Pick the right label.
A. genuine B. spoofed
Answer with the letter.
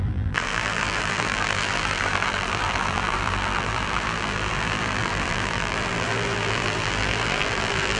B